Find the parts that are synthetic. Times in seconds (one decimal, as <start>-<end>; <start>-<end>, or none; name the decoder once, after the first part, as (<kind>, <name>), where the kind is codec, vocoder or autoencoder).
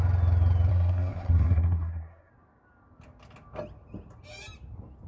0.7-2.3 (codec, SNAC)